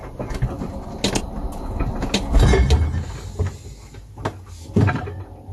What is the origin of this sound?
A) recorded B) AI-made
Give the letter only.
A